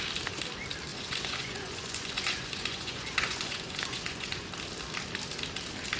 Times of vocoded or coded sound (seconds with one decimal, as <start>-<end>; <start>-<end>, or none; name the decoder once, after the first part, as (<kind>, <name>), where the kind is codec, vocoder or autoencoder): 0.9-4.5 (vocoder, Vocos)